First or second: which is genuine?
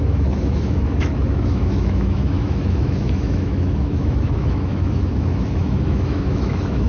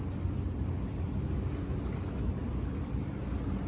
second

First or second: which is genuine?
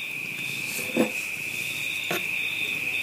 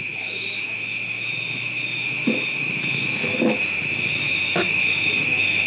first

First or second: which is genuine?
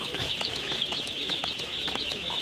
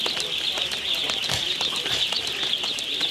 second